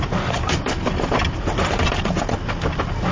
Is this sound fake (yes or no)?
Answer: no